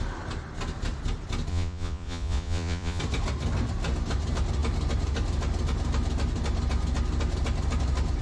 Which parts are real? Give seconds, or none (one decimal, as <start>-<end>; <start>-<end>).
0.0-1.5; 3.0-8.2